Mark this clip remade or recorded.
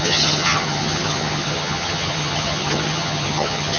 remade